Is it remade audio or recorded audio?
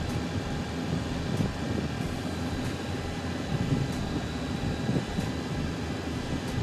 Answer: recorded